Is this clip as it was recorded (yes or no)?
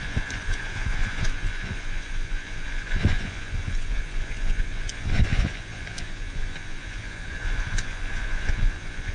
no